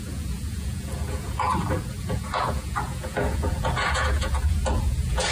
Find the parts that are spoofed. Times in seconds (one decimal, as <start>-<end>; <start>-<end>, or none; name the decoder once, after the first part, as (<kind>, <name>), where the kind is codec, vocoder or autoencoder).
0.0-1.5 (vocoder, Vocos); 2.0-5.3